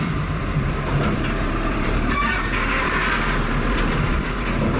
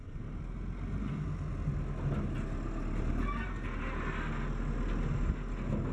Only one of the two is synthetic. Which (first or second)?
first